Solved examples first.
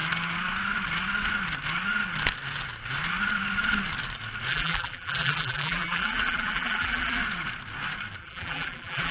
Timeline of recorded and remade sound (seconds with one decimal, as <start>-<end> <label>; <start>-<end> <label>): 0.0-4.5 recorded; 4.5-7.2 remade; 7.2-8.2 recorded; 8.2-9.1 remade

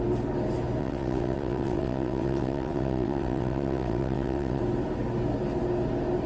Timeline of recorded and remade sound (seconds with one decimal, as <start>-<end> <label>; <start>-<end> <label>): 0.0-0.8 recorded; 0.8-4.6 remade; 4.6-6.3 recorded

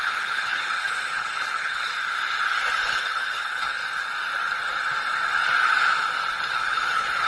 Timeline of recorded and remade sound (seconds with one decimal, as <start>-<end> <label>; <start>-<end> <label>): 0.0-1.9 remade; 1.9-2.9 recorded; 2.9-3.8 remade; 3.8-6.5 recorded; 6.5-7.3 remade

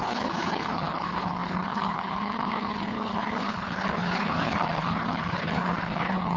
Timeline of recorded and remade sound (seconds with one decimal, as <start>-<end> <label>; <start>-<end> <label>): 0.0-6.4 remade

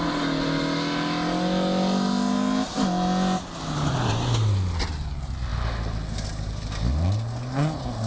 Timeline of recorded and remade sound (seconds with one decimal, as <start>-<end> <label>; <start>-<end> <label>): 0.0-8.1 recorded

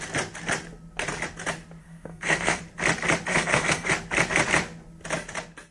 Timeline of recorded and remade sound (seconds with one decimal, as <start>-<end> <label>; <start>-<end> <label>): 0.0-1.8 recorded; 1.8-2.6 remade; 2.6-3.3 recorded; 3.3-3.9 remade; 3.9-5.7 recorded

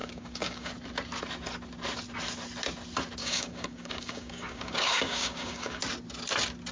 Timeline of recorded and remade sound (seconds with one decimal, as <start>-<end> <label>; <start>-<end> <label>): 0.0-0.7 remade; 0.7-3.2 recorded; 3.2-5.8 remade; 5.8-6.7 recorded

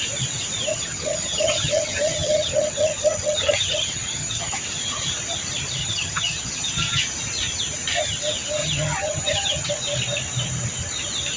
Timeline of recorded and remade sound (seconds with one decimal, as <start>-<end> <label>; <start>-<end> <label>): 0.0-0.7 recorded; 0.7-4.6 remade; 4.6-5.8 recorded; 5.8-7.1 remade; 7.1-8.6 recorded; 8.6-9.7 remade; 9.7-11.4 recorded